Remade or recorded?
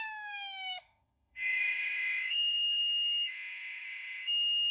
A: remade